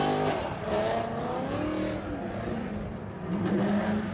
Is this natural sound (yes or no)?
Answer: yes